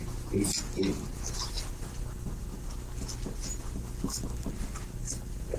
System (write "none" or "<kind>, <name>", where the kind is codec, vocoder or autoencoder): none